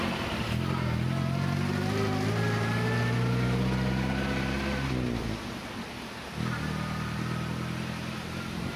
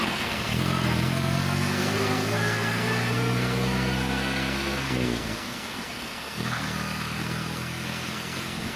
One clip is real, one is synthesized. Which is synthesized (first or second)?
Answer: second